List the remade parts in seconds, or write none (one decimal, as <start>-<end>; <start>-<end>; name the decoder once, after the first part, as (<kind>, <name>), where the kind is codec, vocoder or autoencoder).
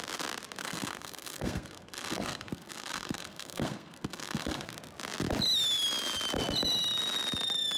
0.6-4.7 (codec, SNAC)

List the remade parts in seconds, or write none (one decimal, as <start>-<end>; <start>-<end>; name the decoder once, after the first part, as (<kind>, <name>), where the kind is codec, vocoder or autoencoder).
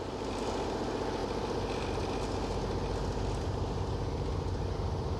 none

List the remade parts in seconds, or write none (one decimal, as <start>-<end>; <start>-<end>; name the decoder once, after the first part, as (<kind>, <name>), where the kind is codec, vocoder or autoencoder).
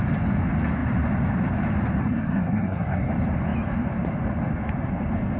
2.0-3.1 (codec, SNAC)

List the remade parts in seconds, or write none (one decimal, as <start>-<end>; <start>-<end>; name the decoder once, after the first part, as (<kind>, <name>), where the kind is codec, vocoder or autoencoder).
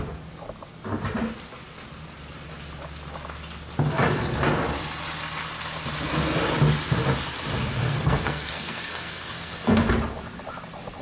7.8-9.8 (codec, SNAC)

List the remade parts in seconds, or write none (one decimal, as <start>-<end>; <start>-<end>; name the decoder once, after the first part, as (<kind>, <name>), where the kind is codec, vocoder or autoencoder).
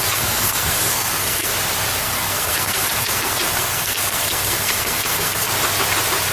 0.0-1.5 (codec, SNAC); 2.0-5.5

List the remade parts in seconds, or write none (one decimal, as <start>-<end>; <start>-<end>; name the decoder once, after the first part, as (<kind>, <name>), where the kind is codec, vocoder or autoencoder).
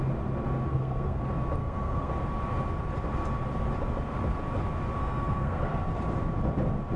0.7-1.2 (codec, SNAC); 1.6-2.1; 5.0-5.6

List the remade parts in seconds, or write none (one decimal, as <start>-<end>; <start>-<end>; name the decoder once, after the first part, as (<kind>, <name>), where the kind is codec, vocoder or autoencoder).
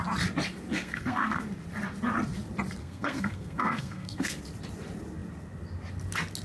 0.7-1.4 (codec, SNAC); 2.8-4.4